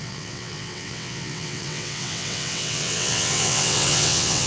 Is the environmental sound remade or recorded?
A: remade